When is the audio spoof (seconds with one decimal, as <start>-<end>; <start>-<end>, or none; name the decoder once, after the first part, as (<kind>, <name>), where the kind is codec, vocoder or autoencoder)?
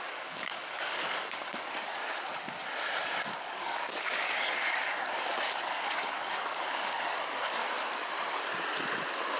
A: 0.0-2.0 (codec, DAC); 3.4-7.6